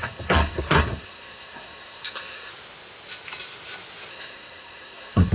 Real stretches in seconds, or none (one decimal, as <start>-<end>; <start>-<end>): 2.5-4.1